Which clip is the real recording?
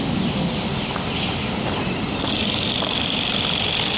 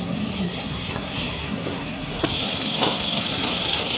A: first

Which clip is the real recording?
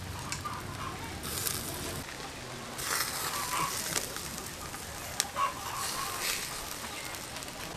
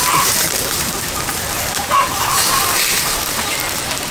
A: first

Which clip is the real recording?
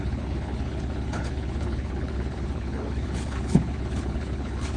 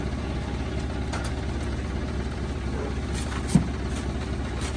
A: second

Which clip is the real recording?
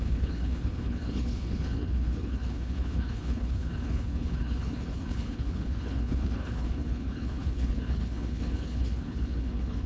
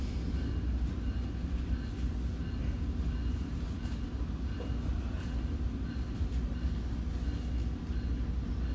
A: second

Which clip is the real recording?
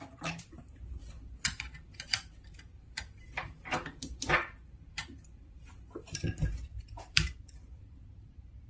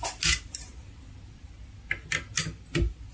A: second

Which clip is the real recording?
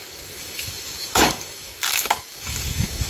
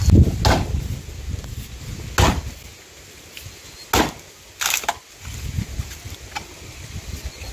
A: second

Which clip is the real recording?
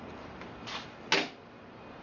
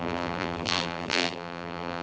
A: first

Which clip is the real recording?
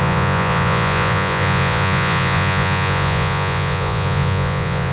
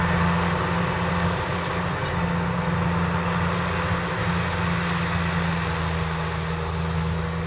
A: second